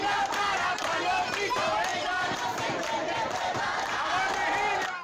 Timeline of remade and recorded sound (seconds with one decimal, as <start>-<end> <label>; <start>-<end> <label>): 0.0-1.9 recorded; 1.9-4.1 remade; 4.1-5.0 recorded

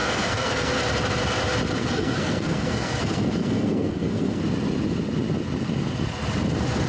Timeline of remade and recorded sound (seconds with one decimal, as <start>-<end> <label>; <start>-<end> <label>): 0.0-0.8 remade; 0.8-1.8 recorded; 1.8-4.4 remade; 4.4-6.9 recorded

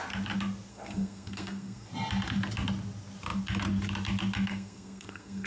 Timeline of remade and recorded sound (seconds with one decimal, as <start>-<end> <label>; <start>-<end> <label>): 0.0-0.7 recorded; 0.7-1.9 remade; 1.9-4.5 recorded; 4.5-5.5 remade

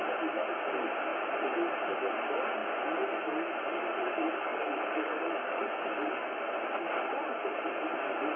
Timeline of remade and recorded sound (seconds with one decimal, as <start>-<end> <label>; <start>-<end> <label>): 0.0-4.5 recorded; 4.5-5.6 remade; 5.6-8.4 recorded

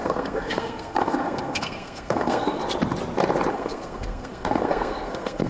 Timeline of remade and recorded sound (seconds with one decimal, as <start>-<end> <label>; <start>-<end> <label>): 0.0-2.6 remade; 2.6-3.5 recorded; 3.5-5.5 remade

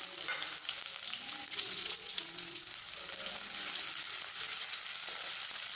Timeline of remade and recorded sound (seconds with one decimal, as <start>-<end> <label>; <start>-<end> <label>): 0.0-1.4 recorded; 1.4-2.6 remade; 2.6-5.8 recorded

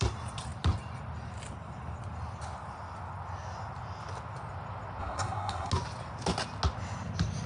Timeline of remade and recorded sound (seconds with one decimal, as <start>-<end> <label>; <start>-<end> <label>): 0.0-5.0 recorded; 5.0-5.7 remade; 5.7-7.5 recorded